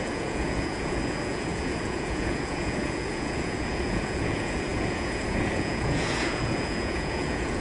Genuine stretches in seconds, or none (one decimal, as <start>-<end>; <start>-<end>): none

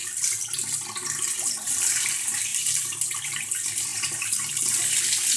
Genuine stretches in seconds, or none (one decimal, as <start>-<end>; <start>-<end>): 0.0-2.5; 3.4-3.9; 4.8-5.4

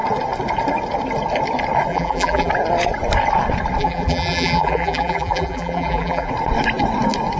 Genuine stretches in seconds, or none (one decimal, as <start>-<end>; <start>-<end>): 0.0-1.9; 2.5-3.8; 6.3-7.4

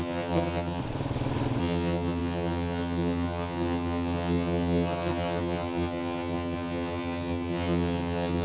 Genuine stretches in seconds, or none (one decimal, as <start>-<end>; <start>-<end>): 0.8-1.6

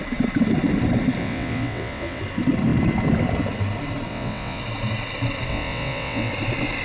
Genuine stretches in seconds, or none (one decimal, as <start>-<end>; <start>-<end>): 0.0-1.2; 2.2-4.1; 4.6-5.5; 6.3-6.8

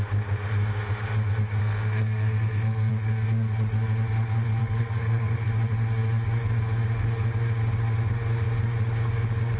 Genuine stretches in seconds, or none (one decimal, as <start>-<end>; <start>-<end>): 0.0-1.6; 2.9-4.6; 5.5-9.6

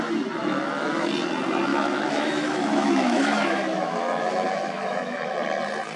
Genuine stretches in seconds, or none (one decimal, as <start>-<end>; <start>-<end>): 0.0-0.4; 1.1-1.7; 5.3-6.0